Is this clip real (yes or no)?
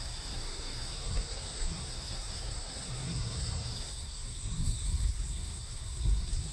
no